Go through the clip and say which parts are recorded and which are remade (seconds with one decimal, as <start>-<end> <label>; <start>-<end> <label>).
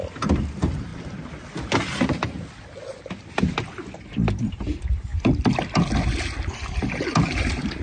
0.0-0.9 remade; 0.9-4.0 recorded; 4.0-5.1 remade; 5.1-6.8 recorded; 6.8-7.8 remade